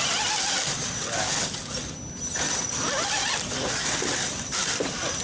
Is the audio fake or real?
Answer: real